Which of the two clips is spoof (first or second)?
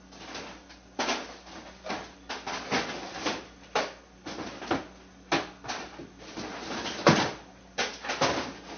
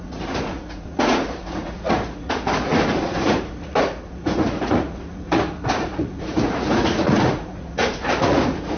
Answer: second